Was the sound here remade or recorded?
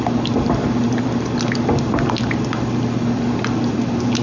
recorded